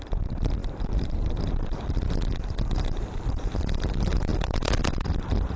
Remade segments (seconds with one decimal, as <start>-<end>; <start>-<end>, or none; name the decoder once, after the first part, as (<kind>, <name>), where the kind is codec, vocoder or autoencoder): 0.0-5.6 (vocoder, BigVGAN v2)